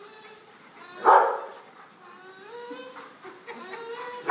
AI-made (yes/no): no